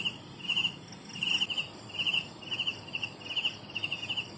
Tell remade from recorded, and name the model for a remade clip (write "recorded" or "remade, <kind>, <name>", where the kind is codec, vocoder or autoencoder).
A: recorded